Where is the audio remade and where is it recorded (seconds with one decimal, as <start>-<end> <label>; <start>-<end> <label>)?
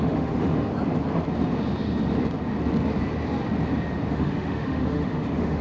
0.0-0.7 remade; 0.7-4.1 recorded; 4.1-5.6 remade